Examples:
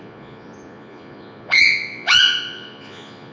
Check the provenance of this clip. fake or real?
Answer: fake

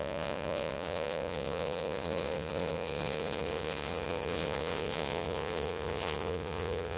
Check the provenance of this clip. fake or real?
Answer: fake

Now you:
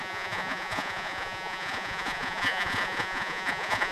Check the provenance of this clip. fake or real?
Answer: fake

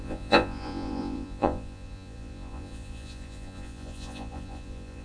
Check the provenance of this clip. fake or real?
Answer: fake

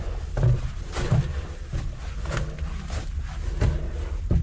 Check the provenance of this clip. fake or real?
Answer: real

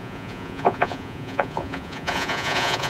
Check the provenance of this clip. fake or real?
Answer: fake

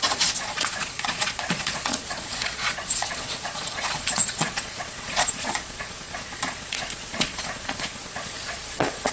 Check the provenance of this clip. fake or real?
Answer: fake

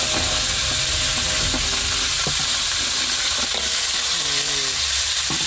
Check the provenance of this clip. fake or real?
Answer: real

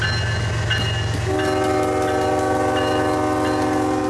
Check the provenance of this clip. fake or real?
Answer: real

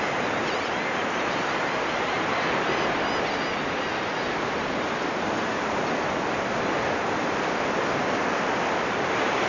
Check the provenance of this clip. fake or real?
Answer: real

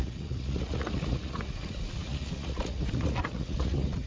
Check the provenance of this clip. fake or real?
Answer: fake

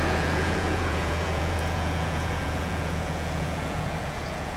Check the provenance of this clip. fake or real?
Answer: fake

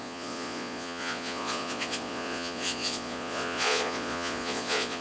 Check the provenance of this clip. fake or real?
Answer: fake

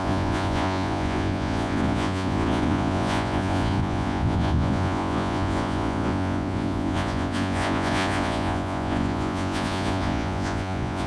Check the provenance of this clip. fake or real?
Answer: fake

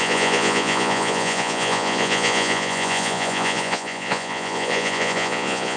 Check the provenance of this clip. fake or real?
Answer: fake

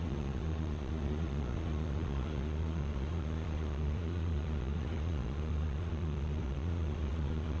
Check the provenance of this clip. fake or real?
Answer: fake